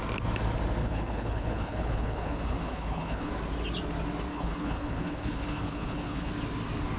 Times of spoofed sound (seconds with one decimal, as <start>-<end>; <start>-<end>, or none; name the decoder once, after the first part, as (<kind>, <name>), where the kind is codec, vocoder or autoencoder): 0.8-3.3 (codec, HILCodec); 4.3-6.3